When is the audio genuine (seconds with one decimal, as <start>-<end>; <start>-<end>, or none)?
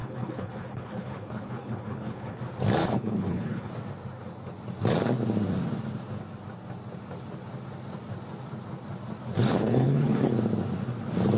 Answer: 2.4-2.8; 3.7-9.4; 10.3-11.4